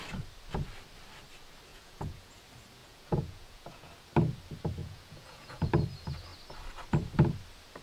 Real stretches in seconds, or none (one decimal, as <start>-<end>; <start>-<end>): 0.0-1.7; 2.4-2.8; 3.9-4.8; 5.7-7.8